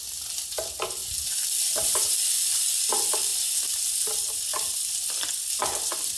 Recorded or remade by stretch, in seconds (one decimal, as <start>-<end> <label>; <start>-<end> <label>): 0.0-3.3 remade; 3.3-3.9 recorded; 3.9-6.2 remade